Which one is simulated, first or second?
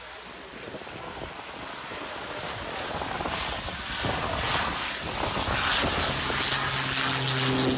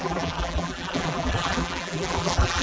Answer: second